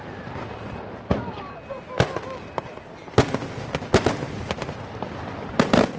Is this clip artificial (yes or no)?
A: no